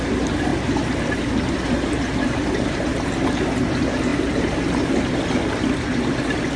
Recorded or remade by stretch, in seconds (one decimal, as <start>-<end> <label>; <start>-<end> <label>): 0.0-6.6 recorded